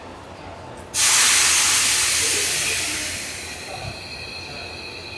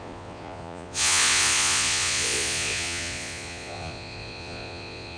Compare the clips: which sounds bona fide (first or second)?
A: first